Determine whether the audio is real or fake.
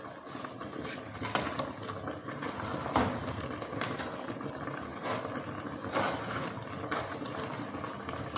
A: real